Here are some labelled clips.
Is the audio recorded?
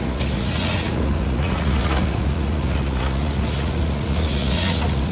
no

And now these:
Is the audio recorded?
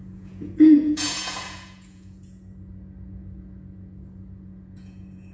no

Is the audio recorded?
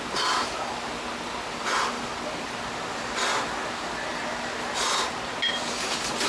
yes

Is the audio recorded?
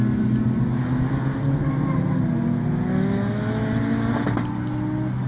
yes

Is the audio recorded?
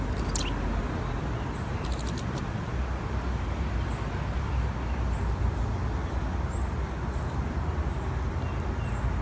yes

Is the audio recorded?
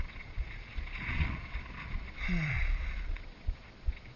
no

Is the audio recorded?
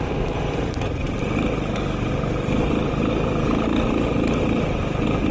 yes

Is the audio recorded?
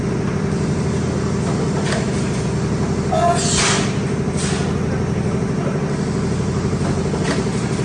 yes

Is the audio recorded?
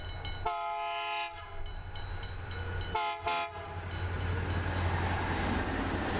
yes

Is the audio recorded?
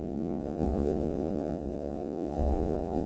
no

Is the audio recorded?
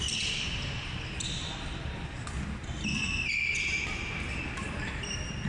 yes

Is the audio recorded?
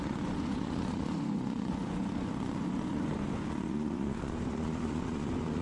no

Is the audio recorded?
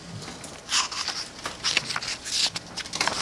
yes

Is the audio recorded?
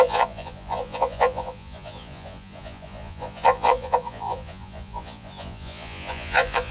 no